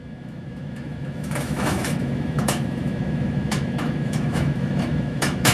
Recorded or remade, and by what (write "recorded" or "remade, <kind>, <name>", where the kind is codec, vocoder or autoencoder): remade, autoencoder, DAC-VAE